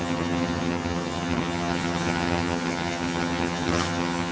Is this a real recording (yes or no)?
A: no